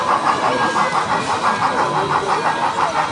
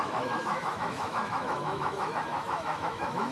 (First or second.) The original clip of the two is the first